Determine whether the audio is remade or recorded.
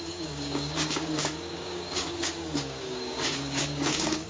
remade